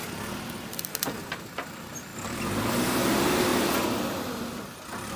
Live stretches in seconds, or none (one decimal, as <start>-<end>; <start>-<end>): 0.0-1.0; 2.1-2.7; 3.5-5.2